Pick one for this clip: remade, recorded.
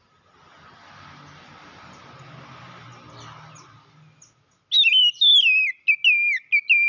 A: recorded